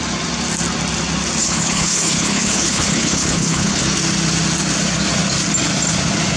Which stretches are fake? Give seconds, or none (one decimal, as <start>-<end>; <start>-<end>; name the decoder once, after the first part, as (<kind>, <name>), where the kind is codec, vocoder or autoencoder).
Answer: 1.4-3.8 (codec, HILCodec)